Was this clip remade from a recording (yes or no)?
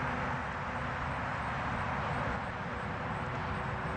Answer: no